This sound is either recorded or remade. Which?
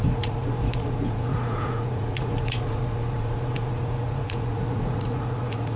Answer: remade